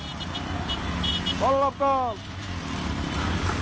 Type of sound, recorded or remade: recorded